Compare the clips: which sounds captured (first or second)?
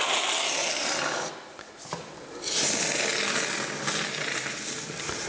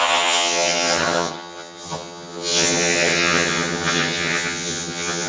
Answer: first